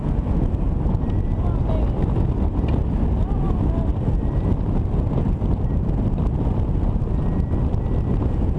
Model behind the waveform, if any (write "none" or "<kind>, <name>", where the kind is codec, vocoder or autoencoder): none